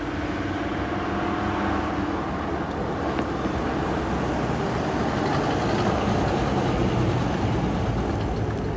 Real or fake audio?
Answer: real